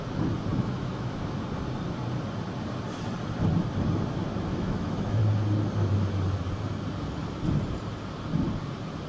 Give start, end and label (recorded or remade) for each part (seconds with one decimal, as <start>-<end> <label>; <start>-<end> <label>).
0.0-0.5 recorded; 0.5-1.4 remade; 1.4-4.5 recorded; 4.5-5.2 remade; 5.2-9.1 recorded